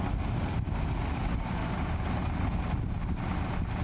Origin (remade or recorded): recorded